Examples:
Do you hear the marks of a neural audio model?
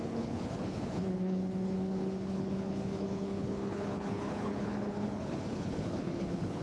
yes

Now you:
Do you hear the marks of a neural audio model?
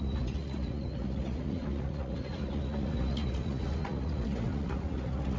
yes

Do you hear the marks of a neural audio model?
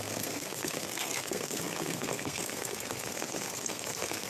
yes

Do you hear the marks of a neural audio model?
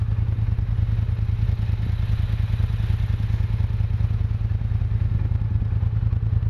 no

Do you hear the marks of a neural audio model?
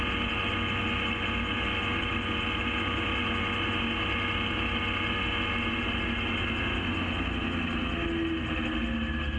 no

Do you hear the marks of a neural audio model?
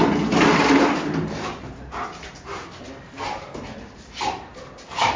no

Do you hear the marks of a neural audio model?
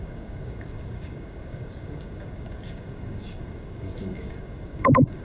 yes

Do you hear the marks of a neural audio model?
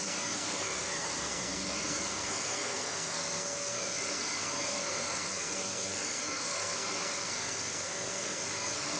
yes